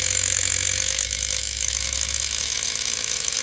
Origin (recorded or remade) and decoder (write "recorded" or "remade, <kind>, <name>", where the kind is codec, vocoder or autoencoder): remade, autoencoder, DAC-VAE